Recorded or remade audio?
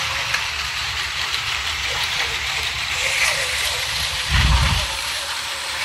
remade